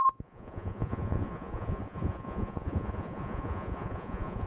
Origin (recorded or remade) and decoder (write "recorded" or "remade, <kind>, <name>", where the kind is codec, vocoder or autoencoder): remade, vocoder, Vocos